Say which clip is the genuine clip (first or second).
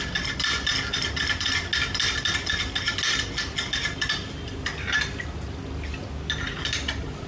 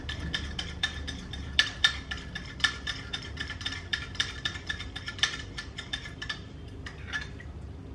first